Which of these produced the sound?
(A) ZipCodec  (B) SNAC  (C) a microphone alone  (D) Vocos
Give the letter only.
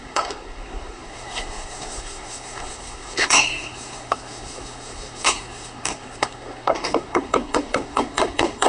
B